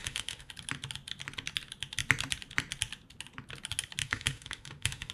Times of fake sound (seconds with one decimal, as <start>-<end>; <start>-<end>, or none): 0.0-0.5; 4.0-5.1